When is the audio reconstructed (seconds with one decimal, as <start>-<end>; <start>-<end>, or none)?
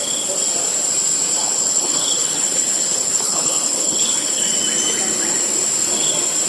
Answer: 1.4-4.5